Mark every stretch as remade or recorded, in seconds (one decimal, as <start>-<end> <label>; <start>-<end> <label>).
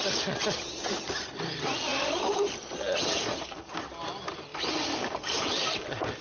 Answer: 0.0-6.2 recorded